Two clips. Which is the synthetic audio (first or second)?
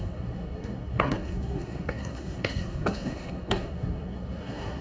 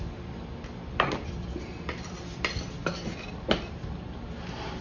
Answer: first